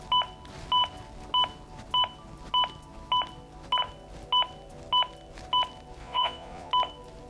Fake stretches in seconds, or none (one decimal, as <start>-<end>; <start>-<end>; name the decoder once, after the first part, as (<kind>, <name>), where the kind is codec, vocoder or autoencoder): 6.0-6.7 (vocoder, Vocos)